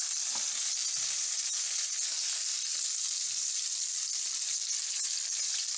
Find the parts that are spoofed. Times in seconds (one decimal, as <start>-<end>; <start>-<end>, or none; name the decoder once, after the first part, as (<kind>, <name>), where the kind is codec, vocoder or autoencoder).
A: none